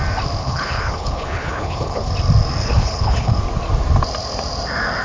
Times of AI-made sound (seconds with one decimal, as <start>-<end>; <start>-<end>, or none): 0.4-2.1; 2.6-3.3